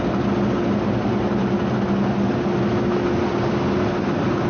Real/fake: real